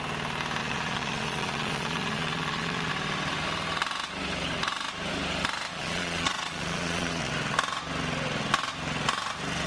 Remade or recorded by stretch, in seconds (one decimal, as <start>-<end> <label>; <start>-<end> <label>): 0.0-0.6 recorded; 0.6-2.9 remade; 2.9-5.7 recorded; 5.7-7.3 remade; 7.3-9.7 recorded